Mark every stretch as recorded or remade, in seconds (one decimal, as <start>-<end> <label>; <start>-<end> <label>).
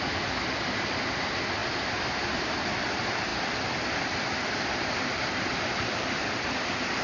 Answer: 0.0-7.0 recorded